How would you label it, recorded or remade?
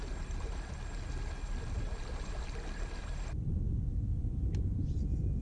recorded